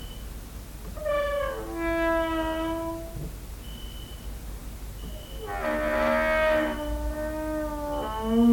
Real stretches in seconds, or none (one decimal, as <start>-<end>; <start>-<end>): 0.0-8.5